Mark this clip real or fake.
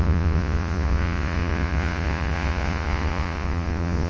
fake